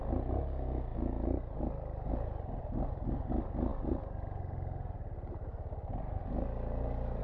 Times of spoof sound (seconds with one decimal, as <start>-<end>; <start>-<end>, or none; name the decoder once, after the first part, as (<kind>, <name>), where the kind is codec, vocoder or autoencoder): none